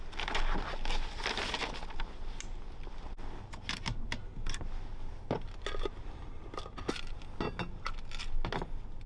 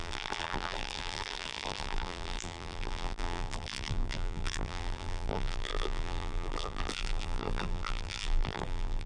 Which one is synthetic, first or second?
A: second